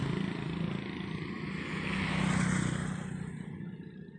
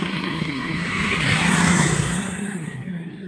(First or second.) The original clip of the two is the first